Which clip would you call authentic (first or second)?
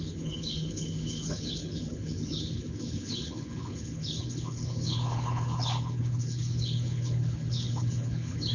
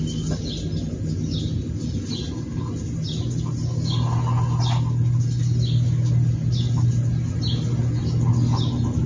second